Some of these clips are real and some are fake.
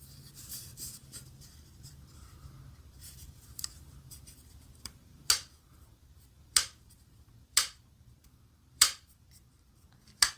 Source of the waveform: fake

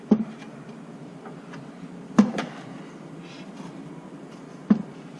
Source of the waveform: fake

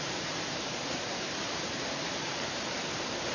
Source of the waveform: fake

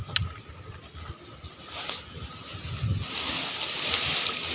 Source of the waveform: real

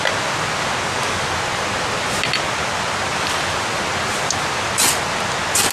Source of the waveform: real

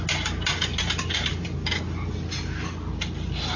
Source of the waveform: real